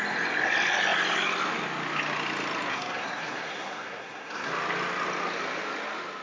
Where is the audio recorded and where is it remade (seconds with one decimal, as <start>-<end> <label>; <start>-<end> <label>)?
0.0-2.7 recorded; 2.7-4.5 remade; 4.5-6.2 recorded